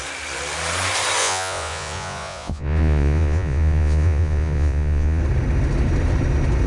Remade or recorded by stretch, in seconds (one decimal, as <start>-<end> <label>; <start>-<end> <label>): 0.0-1.2 recorded; 1.2-5.2 remade; 5.2-6.7 recorded